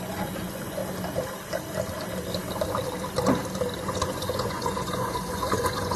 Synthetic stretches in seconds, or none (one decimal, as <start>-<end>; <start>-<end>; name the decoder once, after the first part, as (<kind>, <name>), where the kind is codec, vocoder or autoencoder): 0.0-0.8 (vocoder, Vocos); 3.8-6.0